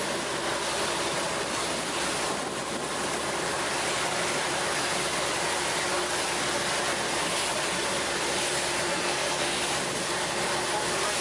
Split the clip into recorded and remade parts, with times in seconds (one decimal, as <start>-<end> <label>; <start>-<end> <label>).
0.0-8.9 recorded; 8.9-9.6 remade; 9.6-11.2 recorded